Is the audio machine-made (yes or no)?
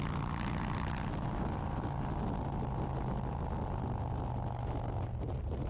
no